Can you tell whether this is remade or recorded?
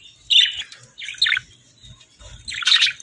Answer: recorded